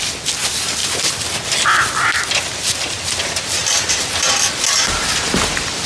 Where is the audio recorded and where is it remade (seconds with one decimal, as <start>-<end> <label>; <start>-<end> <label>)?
0.0-5.9 recorded